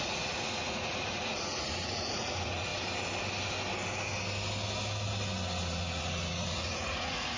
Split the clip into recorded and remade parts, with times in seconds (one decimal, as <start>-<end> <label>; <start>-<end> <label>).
0.0-2.7 remade; 2.7-5.8 recorded; 5.8-7.4 remade